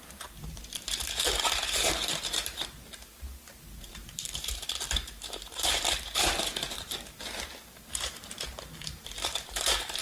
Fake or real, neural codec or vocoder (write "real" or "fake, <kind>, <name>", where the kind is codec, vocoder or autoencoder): fake, vocoder, BigVGAN v2